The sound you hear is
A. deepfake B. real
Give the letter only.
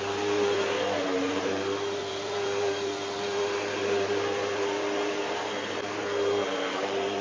A